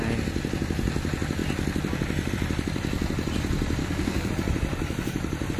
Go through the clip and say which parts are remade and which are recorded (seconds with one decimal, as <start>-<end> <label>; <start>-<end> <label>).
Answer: 0.0-3.8 recorded; 3.8-4.3 remade; 4.3-5.6 recorded